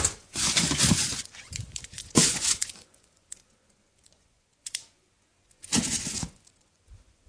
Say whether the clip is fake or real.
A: fake